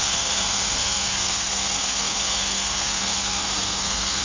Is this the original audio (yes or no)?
no